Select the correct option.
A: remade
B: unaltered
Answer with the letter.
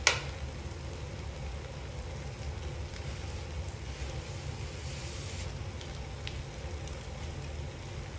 B